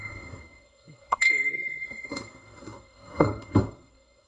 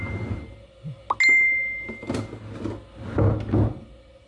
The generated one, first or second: first